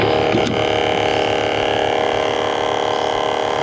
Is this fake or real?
real